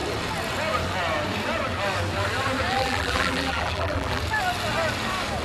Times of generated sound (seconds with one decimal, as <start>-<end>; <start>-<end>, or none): 2.7-4.2